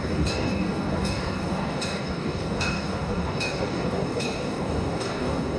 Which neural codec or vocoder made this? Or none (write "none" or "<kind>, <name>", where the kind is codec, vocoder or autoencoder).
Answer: codec, DAC